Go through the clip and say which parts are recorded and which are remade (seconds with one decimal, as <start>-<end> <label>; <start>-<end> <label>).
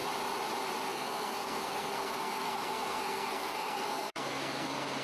0.0-0.9 recorded; 0.9-5.0 remade